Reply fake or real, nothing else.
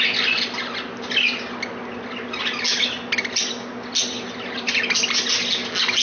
real